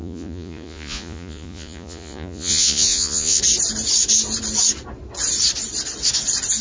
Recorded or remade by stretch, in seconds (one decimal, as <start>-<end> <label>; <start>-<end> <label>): 0.0-3.4 remade; 3.4-6.6 recorded